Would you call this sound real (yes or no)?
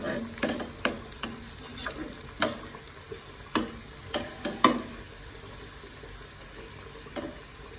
yes